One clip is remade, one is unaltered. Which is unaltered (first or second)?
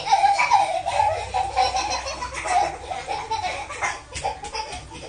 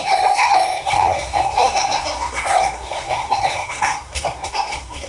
first